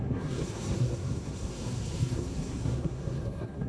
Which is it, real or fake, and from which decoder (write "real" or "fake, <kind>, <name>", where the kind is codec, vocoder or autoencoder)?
fake, codec, SNAC